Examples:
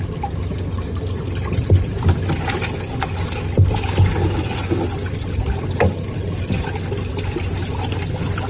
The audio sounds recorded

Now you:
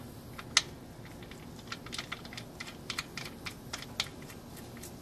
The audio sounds recorded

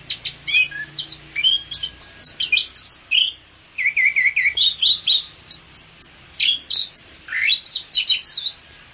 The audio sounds recorded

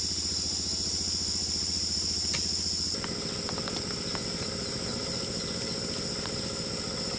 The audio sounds recorded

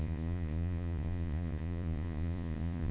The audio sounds remade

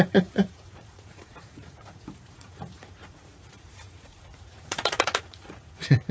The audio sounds remade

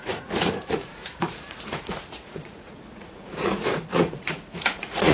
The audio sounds remade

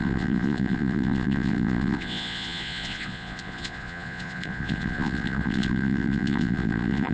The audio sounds remade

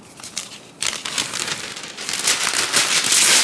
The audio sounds recorded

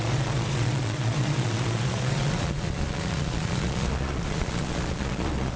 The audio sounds remade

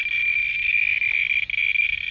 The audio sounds recorded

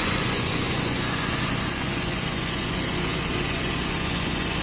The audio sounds remade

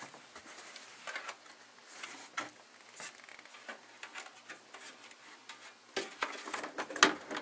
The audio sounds recorded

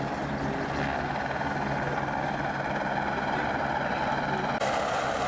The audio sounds recorded